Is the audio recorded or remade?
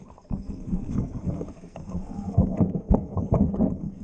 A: remade